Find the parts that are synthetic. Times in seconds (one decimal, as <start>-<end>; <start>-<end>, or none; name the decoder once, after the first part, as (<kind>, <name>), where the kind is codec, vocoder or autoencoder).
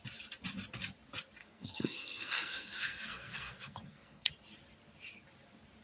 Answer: 1.4-4.3 (codec, SNAC)